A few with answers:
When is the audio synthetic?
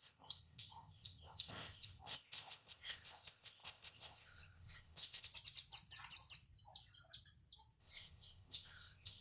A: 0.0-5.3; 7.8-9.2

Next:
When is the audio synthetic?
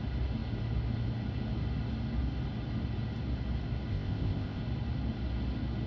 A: 3.9-4.6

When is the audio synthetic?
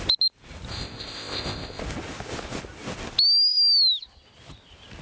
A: 0.7-1.8